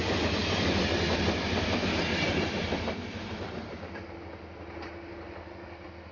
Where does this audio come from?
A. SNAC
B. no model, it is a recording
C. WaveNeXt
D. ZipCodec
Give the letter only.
B